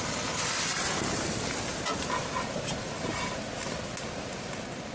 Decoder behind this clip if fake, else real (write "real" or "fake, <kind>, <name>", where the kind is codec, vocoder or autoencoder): real